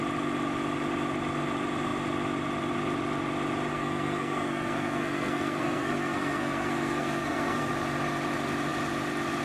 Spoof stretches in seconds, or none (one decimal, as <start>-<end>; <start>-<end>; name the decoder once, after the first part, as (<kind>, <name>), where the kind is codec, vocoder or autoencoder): 3.7-7.7 (codec, SNAC)